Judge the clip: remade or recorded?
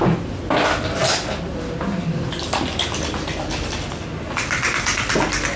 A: recorded